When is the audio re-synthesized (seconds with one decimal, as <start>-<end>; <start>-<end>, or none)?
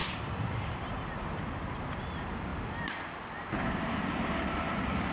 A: 0.0-2.5; 3.8-5.1